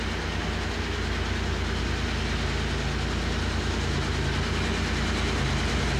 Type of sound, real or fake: real